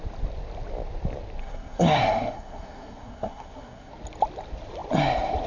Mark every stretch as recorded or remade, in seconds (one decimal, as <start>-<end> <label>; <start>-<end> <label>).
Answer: 0.0-1.4 recorded; 1.4-3.9 remade; 3.9-5.5 recorded